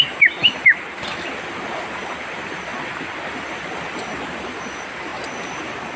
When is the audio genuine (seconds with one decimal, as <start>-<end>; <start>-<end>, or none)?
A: 0.0-6.0